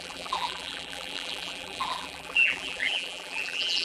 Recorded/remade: remade